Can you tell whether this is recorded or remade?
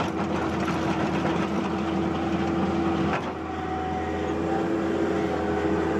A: recorded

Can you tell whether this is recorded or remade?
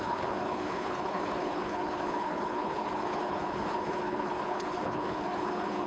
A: remade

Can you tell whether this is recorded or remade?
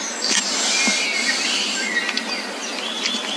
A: recorded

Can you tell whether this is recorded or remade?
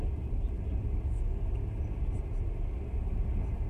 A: recorded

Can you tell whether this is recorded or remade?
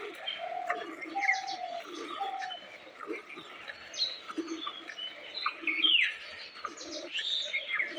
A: recorded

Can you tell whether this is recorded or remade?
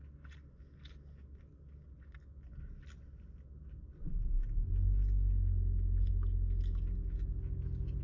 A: recorded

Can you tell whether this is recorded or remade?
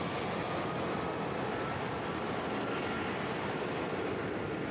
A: recorded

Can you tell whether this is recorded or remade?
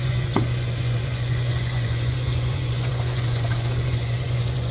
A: remade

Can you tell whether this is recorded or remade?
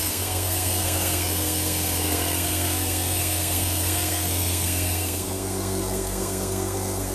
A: remade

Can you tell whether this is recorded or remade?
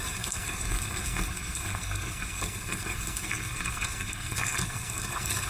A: remade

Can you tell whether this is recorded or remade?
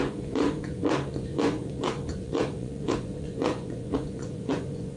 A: remade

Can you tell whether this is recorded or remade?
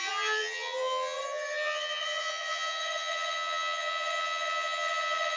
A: remade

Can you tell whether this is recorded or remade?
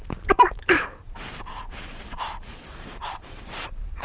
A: remade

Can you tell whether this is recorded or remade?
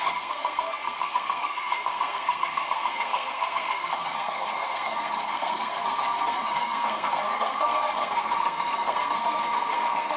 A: remade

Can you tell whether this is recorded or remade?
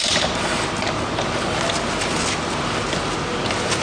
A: recorded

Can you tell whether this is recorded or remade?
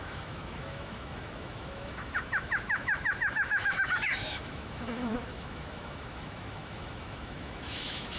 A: remade